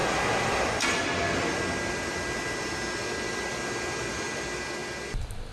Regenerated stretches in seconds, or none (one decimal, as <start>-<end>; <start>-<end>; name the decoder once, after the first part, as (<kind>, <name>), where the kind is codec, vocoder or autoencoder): none